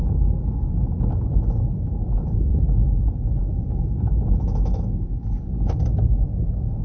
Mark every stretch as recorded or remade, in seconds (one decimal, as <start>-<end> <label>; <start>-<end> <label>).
0.0-6.8 recorded